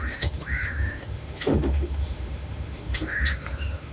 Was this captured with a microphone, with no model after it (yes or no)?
no